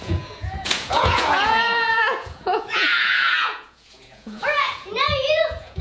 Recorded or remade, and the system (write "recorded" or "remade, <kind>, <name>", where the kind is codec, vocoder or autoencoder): remade, vocoder, Vocos